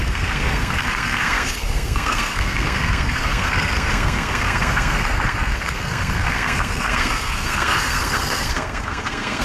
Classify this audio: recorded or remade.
remade